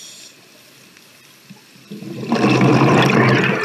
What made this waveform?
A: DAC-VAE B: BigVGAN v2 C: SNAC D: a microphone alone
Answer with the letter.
D